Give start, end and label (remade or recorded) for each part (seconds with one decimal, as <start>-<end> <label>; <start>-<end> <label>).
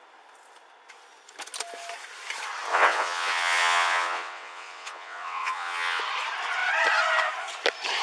0.0-2.7 recorded; 2.7-6.0 remade; 6.0-8.0 recorded